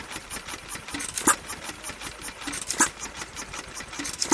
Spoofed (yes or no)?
no